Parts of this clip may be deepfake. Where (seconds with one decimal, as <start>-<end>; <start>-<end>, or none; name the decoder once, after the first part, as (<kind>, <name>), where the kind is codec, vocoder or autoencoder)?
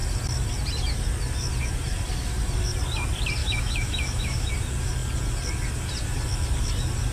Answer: 3.4-4.5 (autoencoder, DAC-VAE)